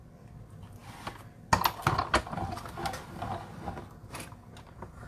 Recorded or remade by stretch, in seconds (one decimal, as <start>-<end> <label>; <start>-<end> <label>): 0.0-5.1 recorded